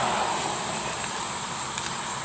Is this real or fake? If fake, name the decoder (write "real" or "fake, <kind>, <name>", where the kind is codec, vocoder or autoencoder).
real